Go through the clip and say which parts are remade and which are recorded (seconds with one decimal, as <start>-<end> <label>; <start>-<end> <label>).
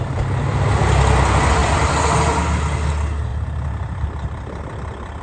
0.0-3.3 recorded; 3.3-4.6 remade; 4.6-5.2 recorded